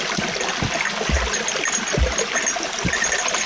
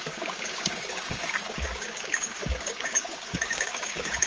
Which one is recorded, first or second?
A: first